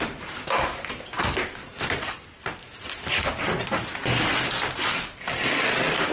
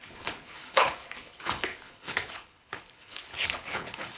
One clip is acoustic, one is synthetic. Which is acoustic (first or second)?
first